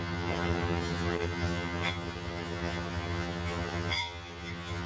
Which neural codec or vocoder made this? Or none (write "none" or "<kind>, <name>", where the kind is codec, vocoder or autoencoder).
vocoder, HiFi-GAN